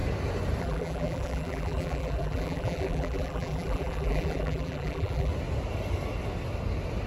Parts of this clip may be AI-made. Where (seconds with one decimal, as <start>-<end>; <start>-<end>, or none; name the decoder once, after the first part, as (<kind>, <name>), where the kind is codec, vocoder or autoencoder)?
0.6-5.3 (vocoder, BigVGAN v2)